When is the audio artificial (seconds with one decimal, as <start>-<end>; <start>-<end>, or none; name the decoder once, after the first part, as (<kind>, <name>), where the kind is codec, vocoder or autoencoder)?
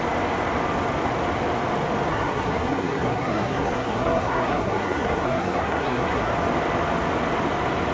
2.1-6.3 (codec, SNAC)